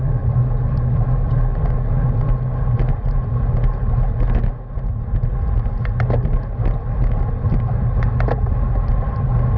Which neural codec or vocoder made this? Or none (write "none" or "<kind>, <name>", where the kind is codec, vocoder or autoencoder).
none